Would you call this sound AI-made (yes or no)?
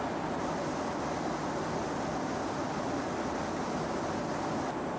no